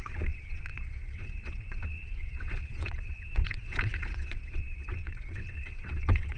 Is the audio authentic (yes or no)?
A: no